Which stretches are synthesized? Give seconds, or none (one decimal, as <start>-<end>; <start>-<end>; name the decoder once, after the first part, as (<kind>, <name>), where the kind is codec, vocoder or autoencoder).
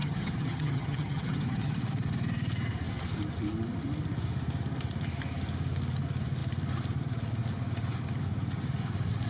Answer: 0.0-1.7 (vocoder, HiFi-GAN)